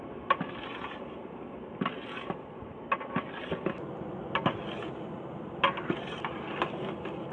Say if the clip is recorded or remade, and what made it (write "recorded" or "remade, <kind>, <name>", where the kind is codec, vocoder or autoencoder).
recorded